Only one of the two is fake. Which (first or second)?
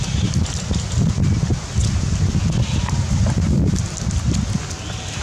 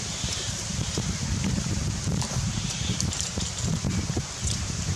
second